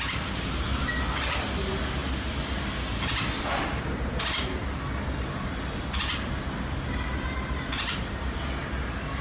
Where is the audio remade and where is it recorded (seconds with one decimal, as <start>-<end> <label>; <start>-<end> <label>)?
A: 0.0-9.2 recorded